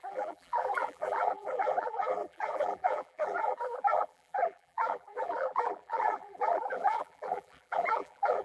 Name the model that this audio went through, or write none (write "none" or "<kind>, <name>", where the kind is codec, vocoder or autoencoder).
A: vocoder, BigVGAN v2